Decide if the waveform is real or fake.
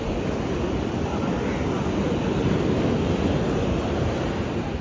real